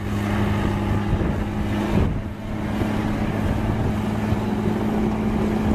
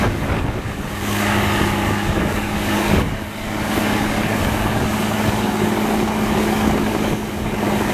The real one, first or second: first